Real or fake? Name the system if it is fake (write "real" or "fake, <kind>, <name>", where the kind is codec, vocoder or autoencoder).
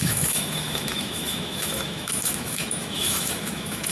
fake, autoencoder, DAC-VAE